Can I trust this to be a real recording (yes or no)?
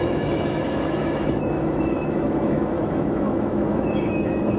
no